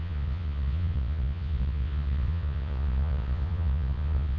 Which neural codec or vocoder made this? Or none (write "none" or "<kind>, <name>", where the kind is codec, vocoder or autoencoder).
vocoder, Vocos